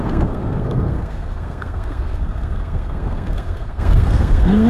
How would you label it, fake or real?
fake